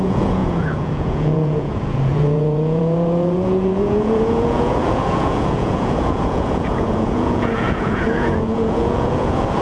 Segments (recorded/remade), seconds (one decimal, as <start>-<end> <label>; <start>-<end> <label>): 0.0-9.6 remade